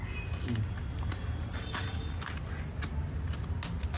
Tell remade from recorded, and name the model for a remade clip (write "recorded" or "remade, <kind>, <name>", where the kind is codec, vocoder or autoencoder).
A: recorded